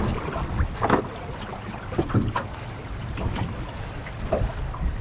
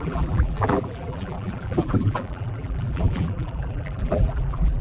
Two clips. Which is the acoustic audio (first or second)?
first